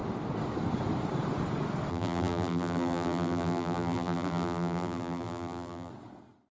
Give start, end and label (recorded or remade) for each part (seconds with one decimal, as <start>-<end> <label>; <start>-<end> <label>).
0.0-1.9 recorded; 1.9-5.9 remade; 5.9-6.6 recorded